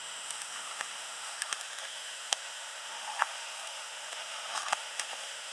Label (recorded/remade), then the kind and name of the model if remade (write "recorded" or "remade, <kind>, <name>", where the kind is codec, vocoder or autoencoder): remade, autoencoder, DAC-VAE